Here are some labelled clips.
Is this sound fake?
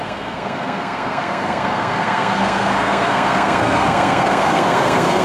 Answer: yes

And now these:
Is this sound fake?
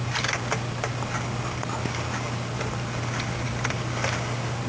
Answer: no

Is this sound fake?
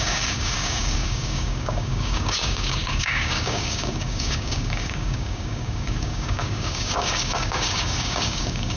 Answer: yes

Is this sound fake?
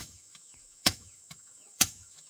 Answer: yes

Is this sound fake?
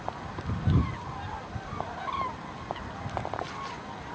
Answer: no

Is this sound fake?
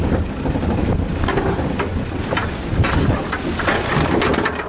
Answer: yes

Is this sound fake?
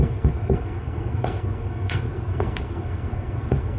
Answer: yes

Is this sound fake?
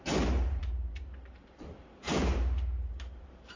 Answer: yes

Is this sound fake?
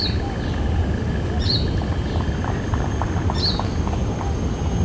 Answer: no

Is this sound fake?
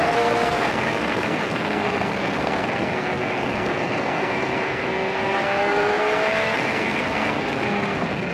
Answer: yes